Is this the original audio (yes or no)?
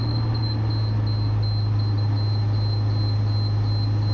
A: yes